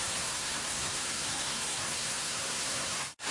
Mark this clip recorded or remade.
remade